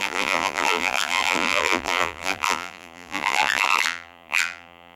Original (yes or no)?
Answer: no